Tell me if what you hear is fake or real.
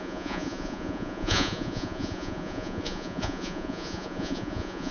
fake